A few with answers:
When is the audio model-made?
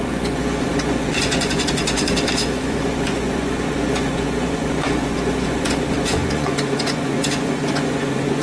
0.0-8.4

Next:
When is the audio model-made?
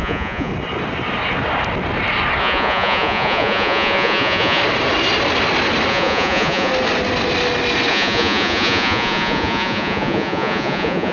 0.0-0.5; 2.4-4.6; 5.9-6.7; 7.9-11.1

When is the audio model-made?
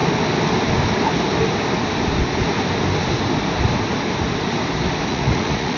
5.1-5.8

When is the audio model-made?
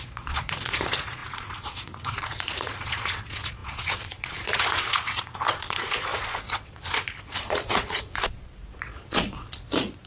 0.0-10.1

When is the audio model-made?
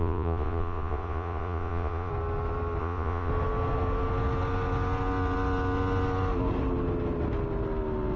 0.0-2.1; 2.8-3.3